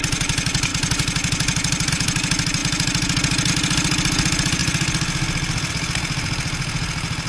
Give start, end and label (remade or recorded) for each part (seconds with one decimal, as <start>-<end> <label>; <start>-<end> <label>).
0.0-7.3 recorded